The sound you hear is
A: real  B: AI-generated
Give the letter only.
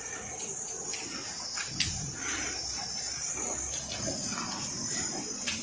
A